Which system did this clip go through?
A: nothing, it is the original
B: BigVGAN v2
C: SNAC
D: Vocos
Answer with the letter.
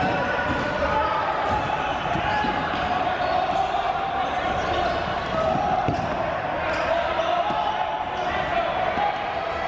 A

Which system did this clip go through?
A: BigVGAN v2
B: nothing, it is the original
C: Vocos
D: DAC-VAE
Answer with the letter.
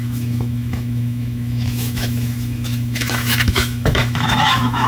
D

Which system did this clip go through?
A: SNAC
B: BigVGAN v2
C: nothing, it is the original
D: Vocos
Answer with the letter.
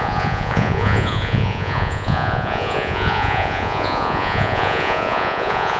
D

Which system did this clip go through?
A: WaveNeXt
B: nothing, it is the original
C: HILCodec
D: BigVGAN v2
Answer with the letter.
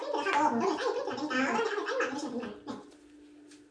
B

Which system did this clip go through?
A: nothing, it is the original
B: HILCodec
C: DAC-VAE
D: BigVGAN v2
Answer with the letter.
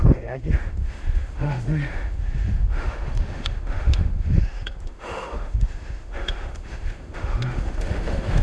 C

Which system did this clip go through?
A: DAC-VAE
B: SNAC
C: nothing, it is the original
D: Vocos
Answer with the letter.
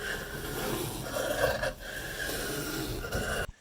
C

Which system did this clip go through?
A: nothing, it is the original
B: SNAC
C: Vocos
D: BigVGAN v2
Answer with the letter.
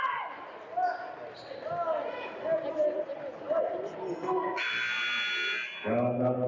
A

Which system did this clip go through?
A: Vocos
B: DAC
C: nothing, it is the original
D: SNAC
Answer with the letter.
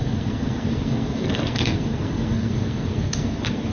D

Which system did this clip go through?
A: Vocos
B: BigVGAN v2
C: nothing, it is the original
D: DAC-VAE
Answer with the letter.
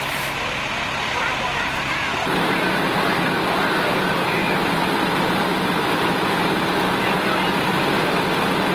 C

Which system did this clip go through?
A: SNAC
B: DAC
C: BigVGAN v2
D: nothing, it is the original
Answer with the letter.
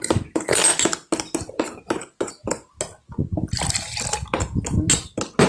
D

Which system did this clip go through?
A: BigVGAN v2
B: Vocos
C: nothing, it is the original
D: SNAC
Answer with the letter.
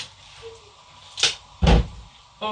C